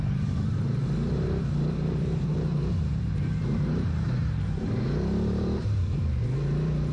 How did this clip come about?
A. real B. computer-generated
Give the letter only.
B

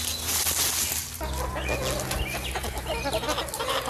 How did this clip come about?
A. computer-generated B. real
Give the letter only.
B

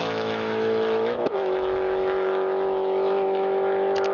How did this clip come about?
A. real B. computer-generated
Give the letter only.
B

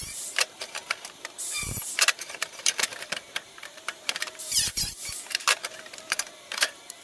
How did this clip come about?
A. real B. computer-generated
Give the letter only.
B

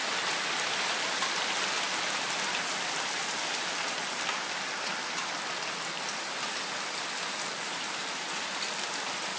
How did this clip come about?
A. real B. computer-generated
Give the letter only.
B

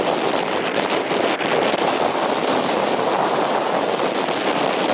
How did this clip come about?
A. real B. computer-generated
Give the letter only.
A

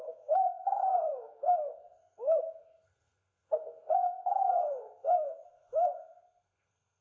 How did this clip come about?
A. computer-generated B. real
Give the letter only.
A